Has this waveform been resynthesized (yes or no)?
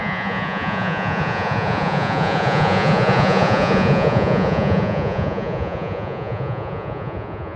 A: yes